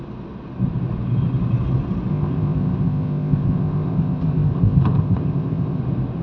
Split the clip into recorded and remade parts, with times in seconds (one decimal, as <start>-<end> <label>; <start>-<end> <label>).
0.0-2.1 recorded; 2.1-5.8 remade; 5.8-6.2 recorded